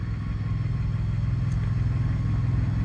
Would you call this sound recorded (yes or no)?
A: yes